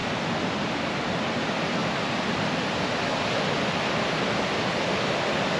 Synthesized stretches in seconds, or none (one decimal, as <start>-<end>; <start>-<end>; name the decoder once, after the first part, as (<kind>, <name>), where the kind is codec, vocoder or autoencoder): none